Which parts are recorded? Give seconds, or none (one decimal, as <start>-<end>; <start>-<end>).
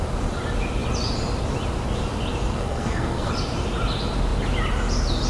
0.0-2.5; 3.3-5.3